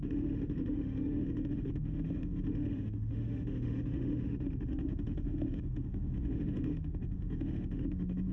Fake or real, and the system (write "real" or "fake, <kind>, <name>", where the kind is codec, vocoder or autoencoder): fake, autoencoder, DAC-VAE